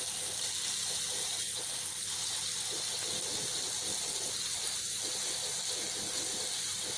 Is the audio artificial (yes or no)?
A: no